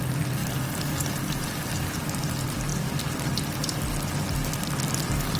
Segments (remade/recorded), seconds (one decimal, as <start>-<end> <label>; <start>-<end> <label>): 0.0-5.4 recorded